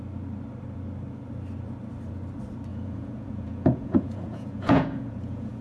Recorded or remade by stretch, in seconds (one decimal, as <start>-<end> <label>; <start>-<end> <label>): 0.0-2.7 recorded; 2.7-5.6 remade